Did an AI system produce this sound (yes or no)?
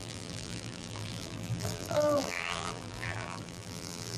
yes